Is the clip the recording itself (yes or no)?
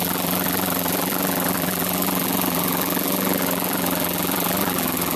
no